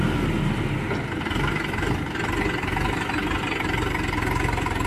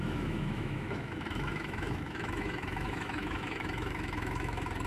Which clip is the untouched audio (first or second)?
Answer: first